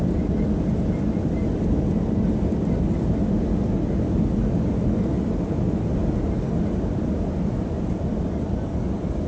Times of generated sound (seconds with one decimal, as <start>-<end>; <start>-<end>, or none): none